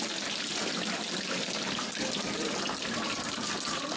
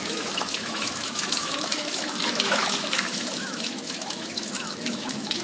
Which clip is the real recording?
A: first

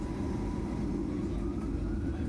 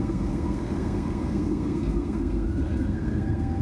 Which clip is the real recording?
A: first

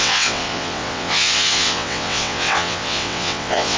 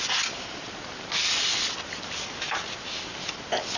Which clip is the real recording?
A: second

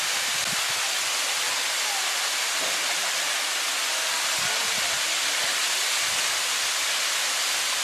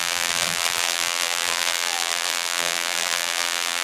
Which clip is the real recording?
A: first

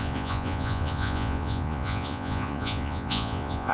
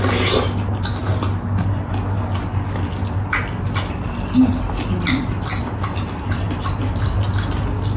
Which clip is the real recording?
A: second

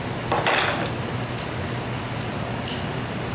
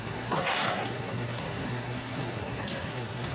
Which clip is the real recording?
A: first